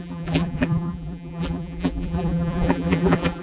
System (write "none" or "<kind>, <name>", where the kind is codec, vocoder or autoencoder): vocoder, BigVGAN v2